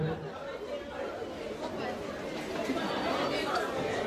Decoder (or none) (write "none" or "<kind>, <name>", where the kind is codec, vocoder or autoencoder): none